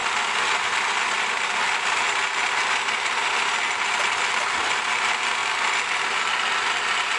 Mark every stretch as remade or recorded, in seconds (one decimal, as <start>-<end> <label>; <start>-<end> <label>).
0.0-7.2 recorded